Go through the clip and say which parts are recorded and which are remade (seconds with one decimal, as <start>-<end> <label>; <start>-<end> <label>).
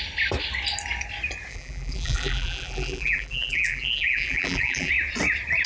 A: 0.0-1.5 recorded; 1.5-4.9 remade; 4.9-5.7 recorded